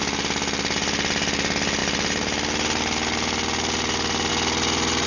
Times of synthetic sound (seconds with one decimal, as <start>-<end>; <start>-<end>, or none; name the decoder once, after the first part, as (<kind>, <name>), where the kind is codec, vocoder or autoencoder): none